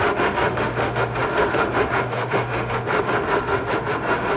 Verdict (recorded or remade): remade